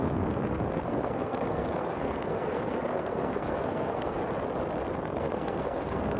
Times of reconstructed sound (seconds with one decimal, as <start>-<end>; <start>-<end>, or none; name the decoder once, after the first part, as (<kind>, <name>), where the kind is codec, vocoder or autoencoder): 0.0-4.2 (codec, SNAC); 4.9-6.2